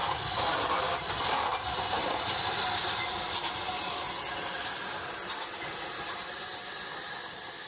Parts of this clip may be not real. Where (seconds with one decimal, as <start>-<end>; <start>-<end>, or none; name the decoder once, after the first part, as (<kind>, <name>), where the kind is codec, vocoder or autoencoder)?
none